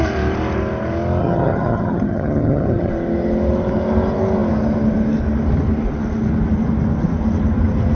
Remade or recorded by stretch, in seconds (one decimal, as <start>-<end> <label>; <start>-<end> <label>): 0.0-1.2 recorded; 1.2-2.9 remade; 2.9-7.9 recorded